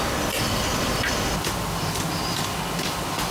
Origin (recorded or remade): recorded